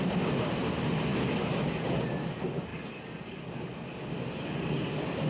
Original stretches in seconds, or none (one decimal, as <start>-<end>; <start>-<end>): 0.0-5.3